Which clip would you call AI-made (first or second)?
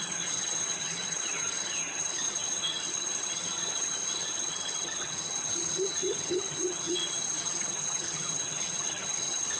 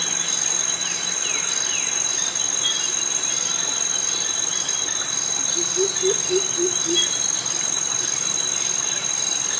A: first